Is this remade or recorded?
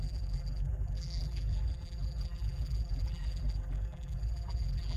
remade